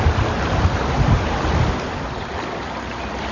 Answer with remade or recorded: recorded